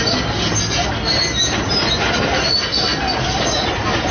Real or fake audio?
real